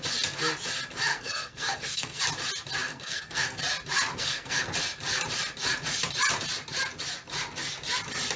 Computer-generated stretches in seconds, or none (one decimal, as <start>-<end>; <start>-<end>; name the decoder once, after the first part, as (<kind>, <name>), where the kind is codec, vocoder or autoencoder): 1.1-2.2 (codec, SNAC); 2.9-3.6; 4.1-4.7